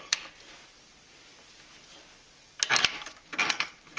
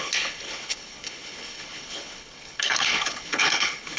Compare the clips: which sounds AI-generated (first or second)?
second